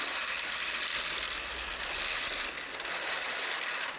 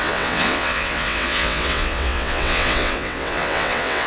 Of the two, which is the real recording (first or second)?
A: first